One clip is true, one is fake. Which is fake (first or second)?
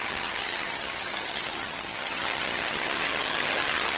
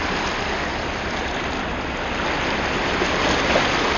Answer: first